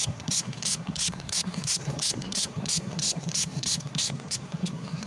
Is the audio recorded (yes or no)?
no